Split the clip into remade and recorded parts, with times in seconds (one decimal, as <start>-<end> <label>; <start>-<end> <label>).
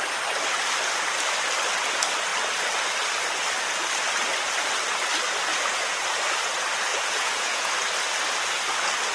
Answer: 0.0-5.5 recorded; 5.5-6.2 remade; 6.2-6.9 recorded; 6.9-7.7 remade; 7.7-9.1 recorded